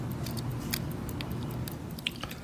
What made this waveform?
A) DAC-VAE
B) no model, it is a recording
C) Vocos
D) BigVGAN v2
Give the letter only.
B